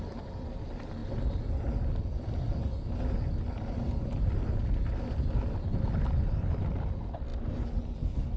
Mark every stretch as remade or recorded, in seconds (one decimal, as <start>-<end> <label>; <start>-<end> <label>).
0.0-8.4 recorded